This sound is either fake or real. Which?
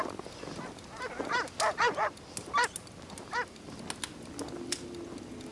real